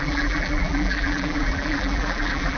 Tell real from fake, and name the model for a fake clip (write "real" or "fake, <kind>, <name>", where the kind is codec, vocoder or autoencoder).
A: fake, vocoder, BigVGAN v2